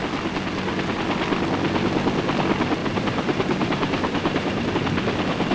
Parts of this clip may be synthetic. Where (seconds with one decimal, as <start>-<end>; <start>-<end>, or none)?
2.8-4.7